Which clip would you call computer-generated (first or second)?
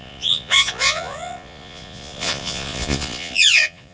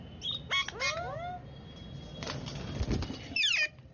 first